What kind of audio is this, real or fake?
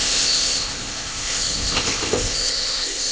fake